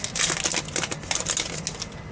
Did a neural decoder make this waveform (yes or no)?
no